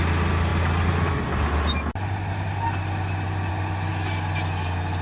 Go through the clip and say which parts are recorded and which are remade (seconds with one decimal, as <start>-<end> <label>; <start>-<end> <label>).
0.0-5.0 recorded